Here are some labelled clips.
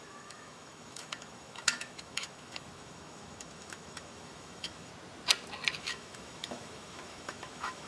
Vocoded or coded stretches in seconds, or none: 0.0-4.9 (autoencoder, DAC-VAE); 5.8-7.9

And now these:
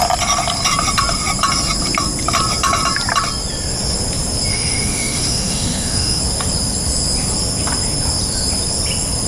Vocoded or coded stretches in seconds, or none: 4.5-6.2 (autoencoder, DAC-VAE)

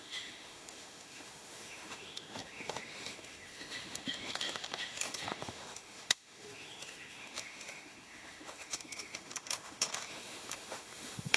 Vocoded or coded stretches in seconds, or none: 0.0-11.4 (autoencoder, DAC-VAE)

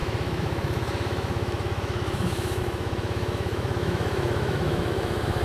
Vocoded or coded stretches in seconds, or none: 0.0-5.4 (autoencoder, DAC-VAE)

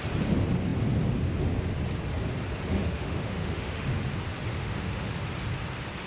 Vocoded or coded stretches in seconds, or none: 2.7-3.9 (autoencoder, DAC-VAE); 4.5-5.1